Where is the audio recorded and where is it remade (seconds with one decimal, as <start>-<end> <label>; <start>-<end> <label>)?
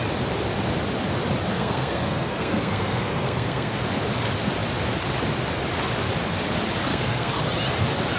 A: 0.0-1.5 recorded; 1.5-3.8 remade; 3.8-6.9 recorded; 6.9-7.4 remade; 7.4-8.2 recorded